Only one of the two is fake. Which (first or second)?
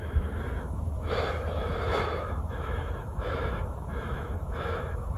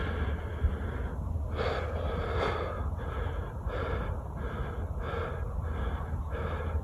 first